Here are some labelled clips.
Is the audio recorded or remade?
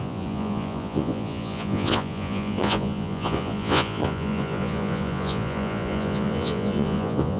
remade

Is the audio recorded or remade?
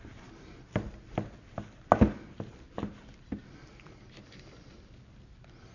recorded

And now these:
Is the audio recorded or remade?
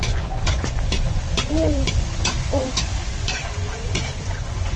remade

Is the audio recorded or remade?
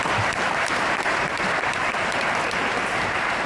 remade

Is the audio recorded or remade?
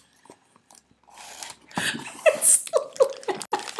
recorded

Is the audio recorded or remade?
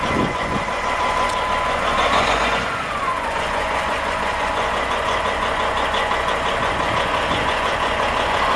remade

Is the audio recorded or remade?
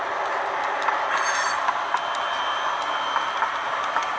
recorded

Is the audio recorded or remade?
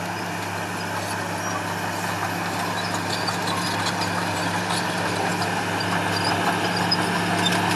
recorded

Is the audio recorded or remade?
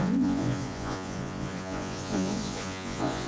remade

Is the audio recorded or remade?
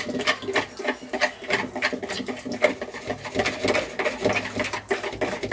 recorded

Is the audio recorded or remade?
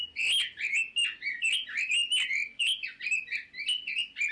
recorded